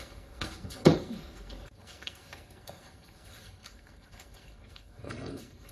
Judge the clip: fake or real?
fake